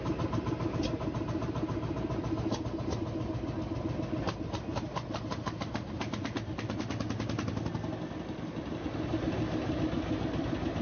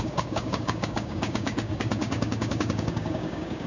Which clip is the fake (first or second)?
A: second